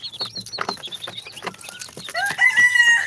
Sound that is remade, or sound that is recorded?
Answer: recorded